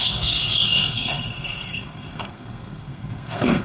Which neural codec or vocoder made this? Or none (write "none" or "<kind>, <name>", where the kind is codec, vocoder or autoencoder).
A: codec, SNAC